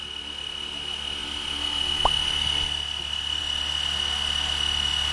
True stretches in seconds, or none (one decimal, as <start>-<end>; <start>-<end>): 0.0-5.1